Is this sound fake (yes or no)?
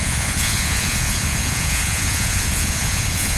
yes